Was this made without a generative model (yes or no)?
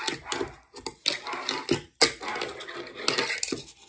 yes